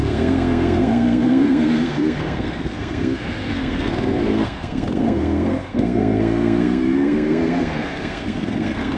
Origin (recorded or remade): remade